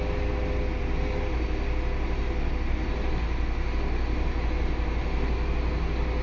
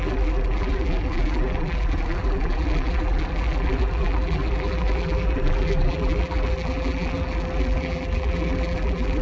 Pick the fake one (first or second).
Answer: second